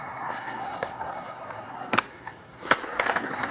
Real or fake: fake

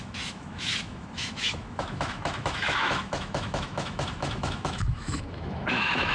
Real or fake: fake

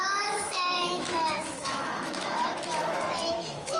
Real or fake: fake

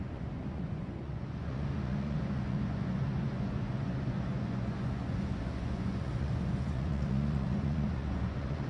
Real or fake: fake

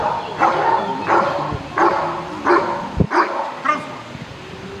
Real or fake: real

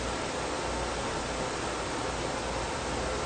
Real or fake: real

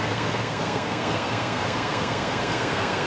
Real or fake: fake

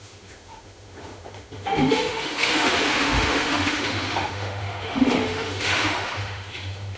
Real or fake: fake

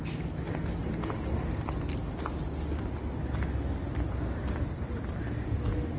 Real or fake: real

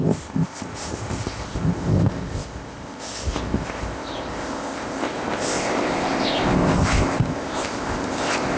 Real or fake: fake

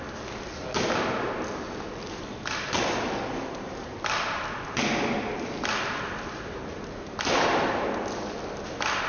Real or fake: real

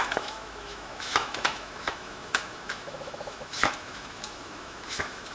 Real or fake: fake